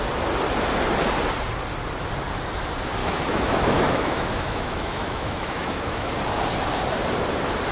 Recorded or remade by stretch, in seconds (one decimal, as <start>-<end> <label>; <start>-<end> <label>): 0.0-3.0 recorded; 3.0-6.1 remade; 6.1-7.7 recorded